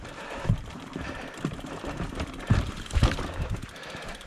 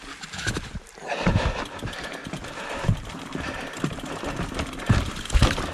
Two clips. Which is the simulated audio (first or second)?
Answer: first